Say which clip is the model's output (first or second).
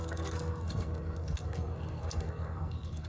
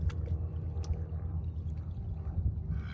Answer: first